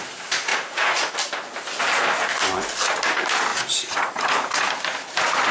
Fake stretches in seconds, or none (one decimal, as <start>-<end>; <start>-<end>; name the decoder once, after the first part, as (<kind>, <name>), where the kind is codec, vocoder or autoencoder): 0.5-1.1 (vocoder, Vocos); 3.5-4.7